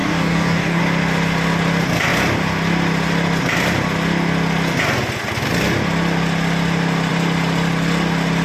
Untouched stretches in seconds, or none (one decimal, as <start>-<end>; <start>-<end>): 0.8-8.4